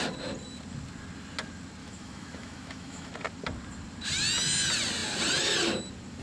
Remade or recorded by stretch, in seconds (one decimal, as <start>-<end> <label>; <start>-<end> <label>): 0.0-1.8 recorded; 1.8-3.1 remade; 3.1-6.2 recorded